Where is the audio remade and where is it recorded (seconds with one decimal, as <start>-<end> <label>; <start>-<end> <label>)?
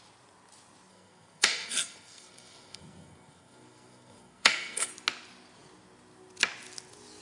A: 0.0-0.9 recorded; 0.9-4.9 remade; 4.9-7.2 recorded